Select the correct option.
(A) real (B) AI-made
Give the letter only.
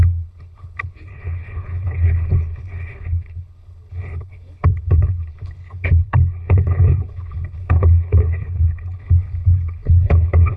B